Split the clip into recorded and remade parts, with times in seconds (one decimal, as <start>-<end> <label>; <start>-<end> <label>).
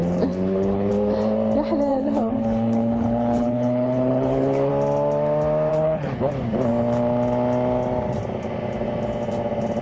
0.0-0.9 remade; 0.9-1.9 recorded; 1.9-4.7 remade; 4.7-5.7 recorded; 5.7-6.3 remade; 6.3-9.8 recorded